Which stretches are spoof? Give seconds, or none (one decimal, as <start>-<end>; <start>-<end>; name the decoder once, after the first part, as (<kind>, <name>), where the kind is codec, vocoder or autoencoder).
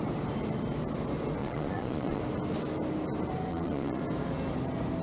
1.4-2.2 (vocoder, Vocos); 3.5-4.0